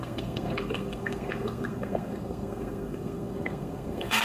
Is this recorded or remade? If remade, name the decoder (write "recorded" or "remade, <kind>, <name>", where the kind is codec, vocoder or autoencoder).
remade, codec, SNAC